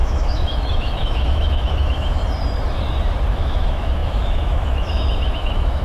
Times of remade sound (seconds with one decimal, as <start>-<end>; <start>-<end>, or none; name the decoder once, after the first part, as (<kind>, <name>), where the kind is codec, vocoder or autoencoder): 0.0-2.2 (autoencoder, DAC-VAE); 3.3-5.8